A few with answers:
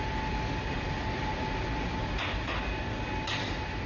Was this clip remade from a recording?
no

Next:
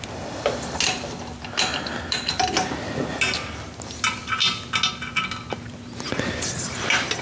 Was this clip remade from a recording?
no